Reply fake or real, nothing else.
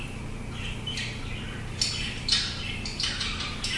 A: real